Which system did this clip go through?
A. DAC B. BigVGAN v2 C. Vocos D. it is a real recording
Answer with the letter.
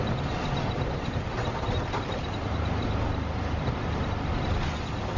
D